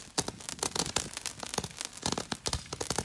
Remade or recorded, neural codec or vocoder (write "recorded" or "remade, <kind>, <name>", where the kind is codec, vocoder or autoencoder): recorded